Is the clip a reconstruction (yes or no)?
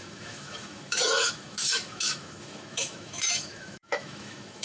yes